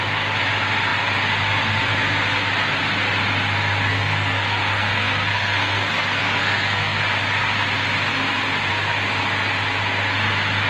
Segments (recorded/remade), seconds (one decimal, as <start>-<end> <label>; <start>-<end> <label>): 0.0-3.9 recorded; 3.9-7.0 remade; 7.0-10.7 recorded